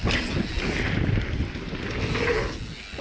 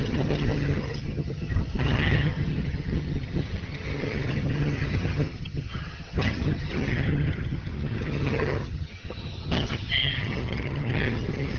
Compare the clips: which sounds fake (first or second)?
second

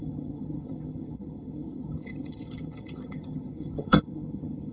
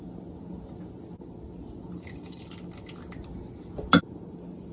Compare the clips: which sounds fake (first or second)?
first